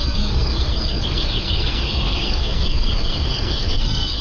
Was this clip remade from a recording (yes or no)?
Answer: yes